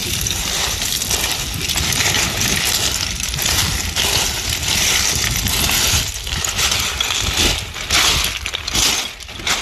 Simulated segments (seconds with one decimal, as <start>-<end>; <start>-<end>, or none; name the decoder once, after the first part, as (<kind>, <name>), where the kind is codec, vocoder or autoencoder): none